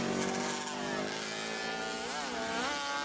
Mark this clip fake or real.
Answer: real